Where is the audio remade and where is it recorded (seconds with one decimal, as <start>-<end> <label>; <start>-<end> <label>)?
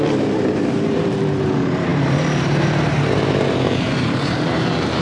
0.0-5.0 remade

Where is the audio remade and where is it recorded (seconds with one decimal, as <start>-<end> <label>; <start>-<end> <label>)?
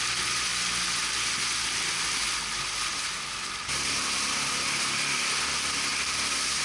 0.0-6.6 recorded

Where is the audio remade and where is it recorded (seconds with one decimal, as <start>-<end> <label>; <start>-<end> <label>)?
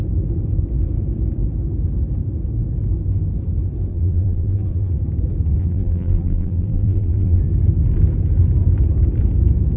0.0-3.9 recorded; 3.9-4.9 remade; 4.9-5.6 recorded; 5.6-7.4 remade; 7.4-9.8 recorded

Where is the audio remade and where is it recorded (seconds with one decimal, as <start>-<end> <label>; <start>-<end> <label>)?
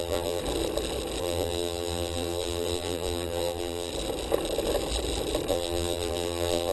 0.0-0.4 remade; 0.4-1.2 recorded; 1.2-3.9 remade; 3.9-5.5 recorded; 5.5-6.7 remade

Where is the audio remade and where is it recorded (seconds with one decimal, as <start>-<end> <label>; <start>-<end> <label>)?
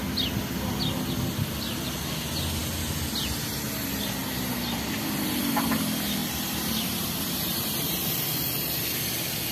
0.0-6.2 recorded; 6.2-8.0 remade; 8.0-9.5 recorded